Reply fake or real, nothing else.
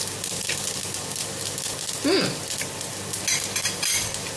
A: real